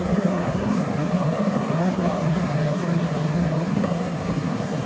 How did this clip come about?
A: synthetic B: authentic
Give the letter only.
A